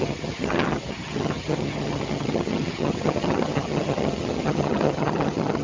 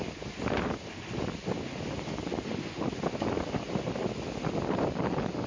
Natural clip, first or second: second